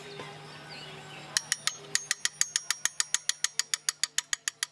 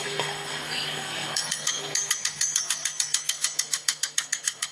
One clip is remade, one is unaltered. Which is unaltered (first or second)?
first